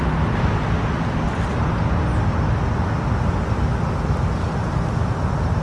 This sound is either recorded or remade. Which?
recorded